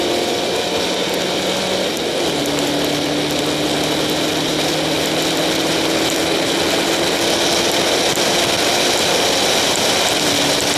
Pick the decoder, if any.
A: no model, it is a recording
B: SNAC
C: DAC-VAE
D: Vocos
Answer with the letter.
A